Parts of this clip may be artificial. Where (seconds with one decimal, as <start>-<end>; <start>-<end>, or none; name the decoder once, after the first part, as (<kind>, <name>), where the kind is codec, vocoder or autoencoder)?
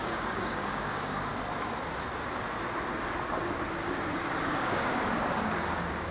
0.0-1.3 (codec, DAC); 4.4-6.1